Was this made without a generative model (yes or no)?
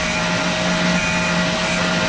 yes